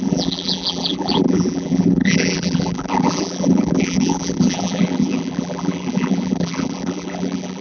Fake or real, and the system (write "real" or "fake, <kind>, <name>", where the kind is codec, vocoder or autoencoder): fake, vocoder, BigVGAN v2